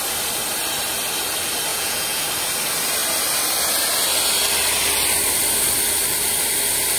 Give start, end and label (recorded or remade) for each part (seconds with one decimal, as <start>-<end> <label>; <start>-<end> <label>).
0.0-1.7 recorded; 1.7-2.2 remade; 2.2-7.0 recorded